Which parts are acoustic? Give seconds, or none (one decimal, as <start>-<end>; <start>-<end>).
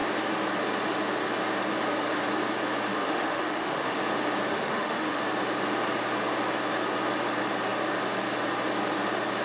0.0-2.9; 4.0-4.5; 5.2-9.4